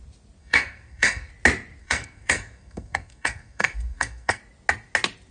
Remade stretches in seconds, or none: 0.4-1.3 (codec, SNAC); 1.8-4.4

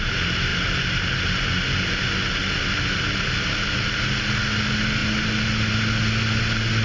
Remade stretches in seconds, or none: none